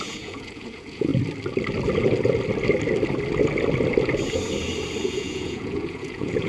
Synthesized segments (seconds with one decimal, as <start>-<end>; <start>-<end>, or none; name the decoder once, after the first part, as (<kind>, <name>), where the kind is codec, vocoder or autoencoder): 0.0-1.1 (vocoder, Vocos); 5.0-6.5